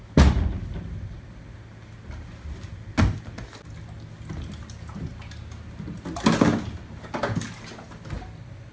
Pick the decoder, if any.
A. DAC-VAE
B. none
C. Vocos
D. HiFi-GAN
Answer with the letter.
B